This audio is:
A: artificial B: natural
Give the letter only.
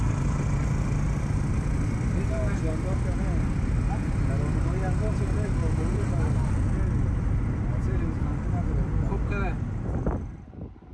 B